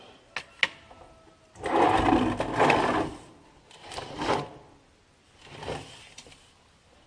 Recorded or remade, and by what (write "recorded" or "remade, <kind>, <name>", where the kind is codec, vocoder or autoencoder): recorded